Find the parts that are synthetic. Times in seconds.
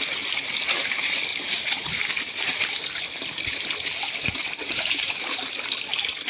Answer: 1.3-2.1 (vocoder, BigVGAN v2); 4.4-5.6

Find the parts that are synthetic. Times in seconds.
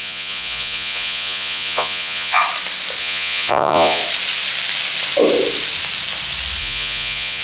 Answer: 0.0-2.4 (vocoder, Vocos); 3.0-4.0; 6.6-7.4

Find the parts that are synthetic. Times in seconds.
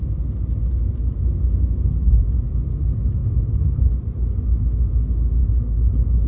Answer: 3.2-3.9 (codec, HILCodec); 5.4-6.3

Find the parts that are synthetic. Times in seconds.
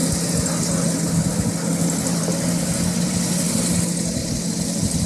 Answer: 3.1-5.1 (vocoder, BigVGAN v2)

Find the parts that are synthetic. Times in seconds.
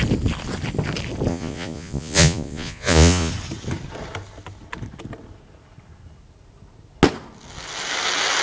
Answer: 1.3-3.3 (vocoder, Vocos)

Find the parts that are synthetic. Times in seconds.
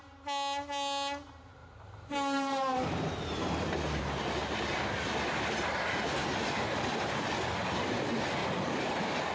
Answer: 1.6-4.0 (vocoder, BigVGAN v2); 6.2-7.3; 8.4-9.3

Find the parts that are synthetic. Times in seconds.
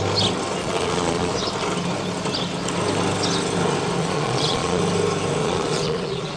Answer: 0.6-1.3 (vocoder, Vocos); 4.0-4.8; 5.4-6.4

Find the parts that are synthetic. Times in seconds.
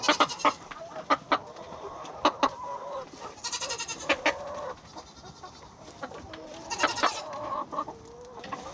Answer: none